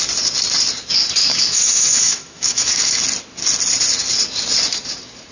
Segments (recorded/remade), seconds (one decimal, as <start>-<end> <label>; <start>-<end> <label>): 0.0-1.2 recorded; 1.2-3.0 remade; 3.0-5.3 recorded